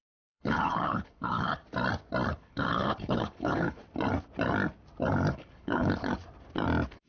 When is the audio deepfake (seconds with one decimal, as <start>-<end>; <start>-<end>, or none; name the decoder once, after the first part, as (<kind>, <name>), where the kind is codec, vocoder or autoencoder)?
0.0-1.6 (codec, HILCodec); 2.3-3.8; 5.3-6.1